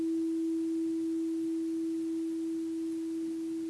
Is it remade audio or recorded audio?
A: recorded